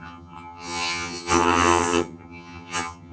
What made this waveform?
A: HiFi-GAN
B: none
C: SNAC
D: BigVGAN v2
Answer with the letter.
A